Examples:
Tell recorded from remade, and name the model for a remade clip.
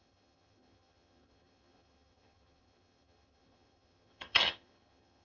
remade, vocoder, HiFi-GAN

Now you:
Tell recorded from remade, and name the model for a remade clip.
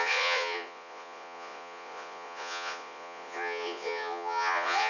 remade, vocoder, Vocos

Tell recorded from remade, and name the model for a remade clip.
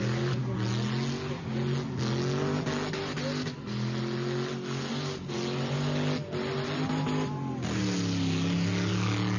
recorded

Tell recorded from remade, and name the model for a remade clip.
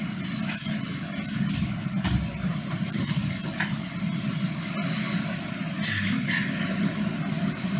recorded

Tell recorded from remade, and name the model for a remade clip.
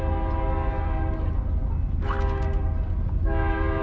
recorded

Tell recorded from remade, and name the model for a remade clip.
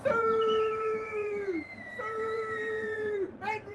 remade, vocoder, Vocos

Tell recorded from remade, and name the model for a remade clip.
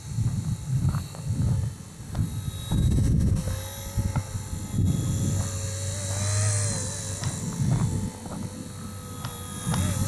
recorded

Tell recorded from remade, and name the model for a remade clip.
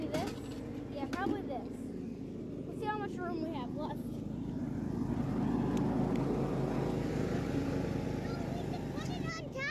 recorded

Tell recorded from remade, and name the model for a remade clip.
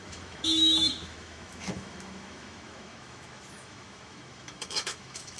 remade, autoencoder, DAC-VAE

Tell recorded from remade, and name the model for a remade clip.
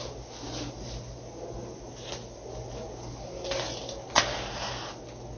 recorded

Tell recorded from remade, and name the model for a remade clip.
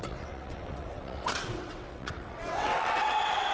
remade, vocoder, WaveNeXt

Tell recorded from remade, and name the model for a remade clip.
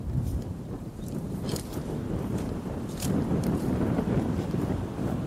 remade, vocoder, BigVGAN v2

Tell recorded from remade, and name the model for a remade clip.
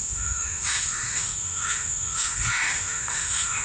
remade, autoencoder, DAC-VAE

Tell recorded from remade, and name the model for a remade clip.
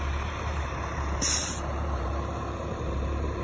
remade, vocoder, BigVGAN v2